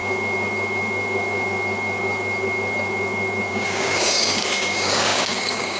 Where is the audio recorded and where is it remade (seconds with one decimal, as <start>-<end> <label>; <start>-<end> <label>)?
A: 0.0-3.5 recorded; 3.5-5.8 remade